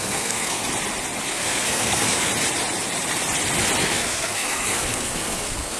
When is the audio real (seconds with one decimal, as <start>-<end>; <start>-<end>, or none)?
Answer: 0.6-1.3; 2.3-3.8